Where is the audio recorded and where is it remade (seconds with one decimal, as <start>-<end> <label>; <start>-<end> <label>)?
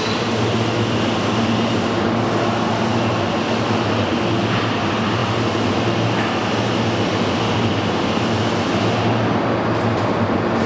0.0-10.7 recorded